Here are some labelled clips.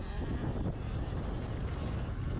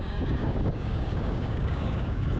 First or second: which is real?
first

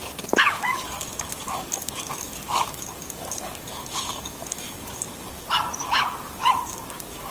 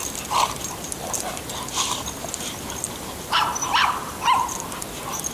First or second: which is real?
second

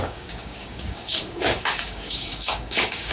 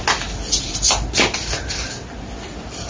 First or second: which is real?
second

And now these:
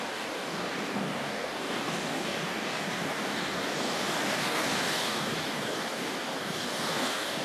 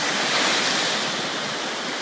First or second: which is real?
second